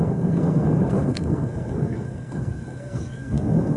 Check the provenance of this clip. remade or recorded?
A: remade